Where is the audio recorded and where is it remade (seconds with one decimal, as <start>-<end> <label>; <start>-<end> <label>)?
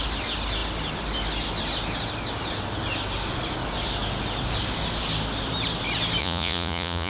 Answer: 0.0-6.2 recorded; 6.2-7.1 remade